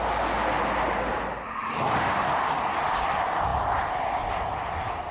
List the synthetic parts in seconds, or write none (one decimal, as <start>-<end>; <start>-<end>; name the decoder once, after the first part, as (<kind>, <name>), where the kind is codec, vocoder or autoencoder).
none